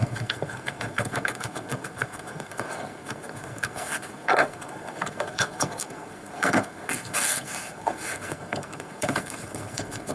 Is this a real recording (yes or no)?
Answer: no